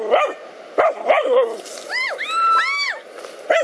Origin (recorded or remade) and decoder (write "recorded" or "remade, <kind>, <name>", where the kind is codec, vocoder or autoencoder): recorded